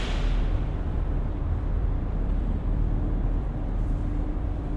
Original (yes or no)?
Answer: no